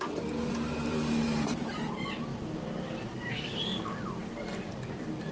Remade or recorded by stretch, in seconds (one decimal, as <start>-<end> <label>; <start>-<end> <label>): 0.0-5.3 remade